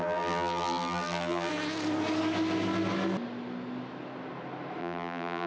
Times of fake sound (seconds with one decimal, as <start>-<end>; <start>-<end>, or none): 0.0-1.5; 4.8-5.5